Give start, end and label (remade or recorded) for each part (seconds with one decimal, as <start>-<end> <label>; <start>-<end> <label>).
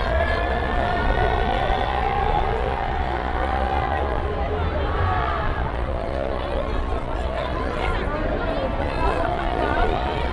0.0-4.3 remade; 4.3-5.2 recorded; 5.2-7.9 remade; 7.9-8.8 recorded; 8.8-10.3 remade